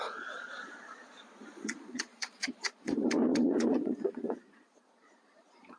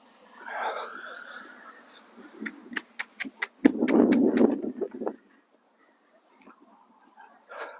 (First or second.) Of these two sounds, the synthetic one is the first